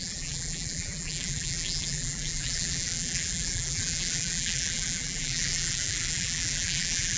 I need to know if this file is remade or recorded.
remade